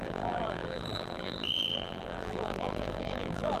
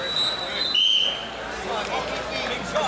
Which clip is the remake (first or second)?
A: first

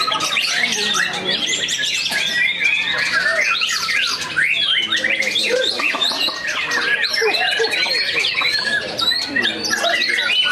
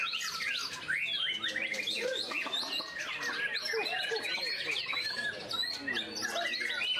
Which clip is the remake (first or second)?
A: first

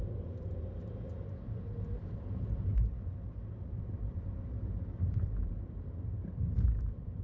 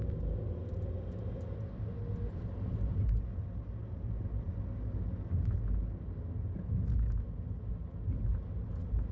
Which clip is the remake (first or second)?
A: first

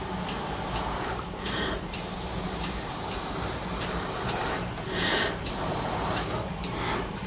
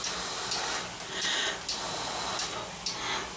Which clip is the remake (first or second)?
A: first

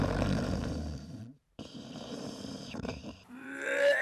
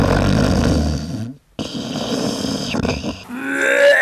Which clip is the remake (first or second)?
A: first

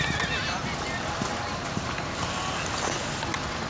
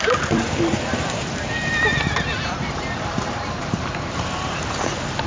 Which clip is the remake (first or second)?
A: second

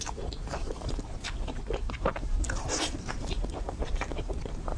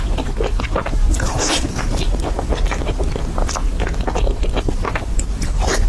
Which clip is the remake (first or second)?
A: first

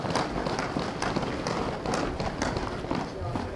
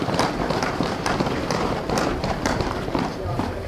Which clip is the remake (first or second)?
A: second